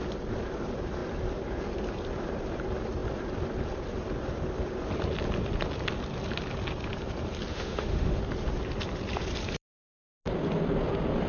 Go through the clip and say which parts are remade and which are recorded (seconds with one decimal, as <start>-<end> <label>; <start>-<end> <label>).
0.0-7.5 recorded; 7.5-8.2 remade; 8.2-11.3 recorded